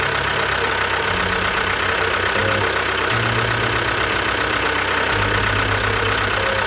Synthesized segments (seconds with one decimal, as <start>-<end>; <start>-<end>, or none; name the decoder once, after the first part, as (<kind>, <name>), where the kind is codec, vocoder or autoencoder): none